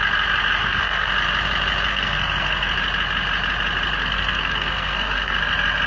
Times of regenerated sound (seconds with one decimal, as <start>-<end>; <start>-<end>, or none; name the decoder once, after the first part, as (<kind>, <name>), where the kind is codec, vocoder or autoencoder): 0.6-1.1 (codec, SNAC); 1.9-2.7; 4.0-5.4